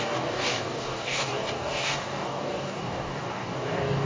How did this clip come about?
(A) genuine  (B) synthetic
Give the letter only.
B